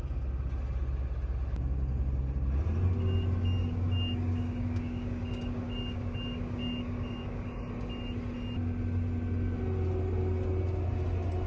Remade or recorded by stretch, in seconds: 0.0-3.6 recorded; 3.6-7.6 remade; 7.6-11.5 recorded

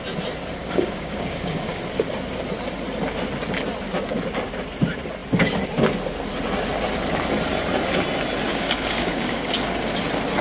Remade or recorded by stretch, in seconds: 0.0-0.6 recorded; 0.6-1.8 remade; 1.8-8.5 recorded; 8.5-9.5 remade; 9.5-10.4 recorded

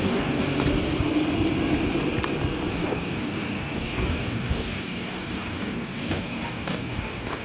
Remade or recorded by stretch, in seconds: 0.0-0.4 remade; 0.4-2.7 recorded; 2.7-7.4 remade

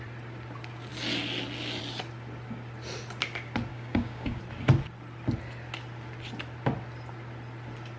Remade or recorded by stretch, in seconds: 0.0-3.7 recorded; 3.7-4.4 remade; 4.4-8.0 recorded

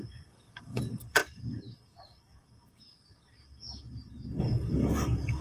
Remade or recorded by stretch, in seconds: 0.0-5.4 remade

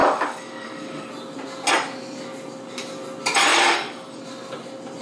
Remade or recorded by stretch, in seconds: 0.0-1.1 remade; 1.1-3.5 recorded; 3.5-4.2 remade; 4.2-5.0 recorded